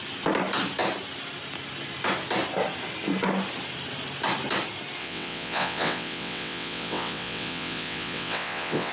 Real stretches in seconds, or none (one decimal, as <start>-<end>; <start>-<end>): 0.0-5.0